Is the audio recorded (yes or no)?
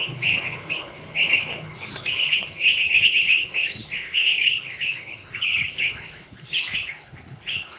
no